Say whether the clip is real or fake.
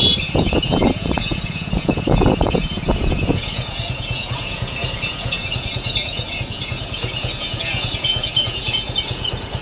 fake